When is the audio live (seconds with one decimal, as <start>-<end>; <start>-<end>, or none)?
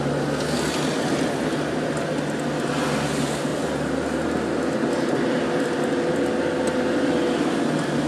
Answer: 0.0-8.1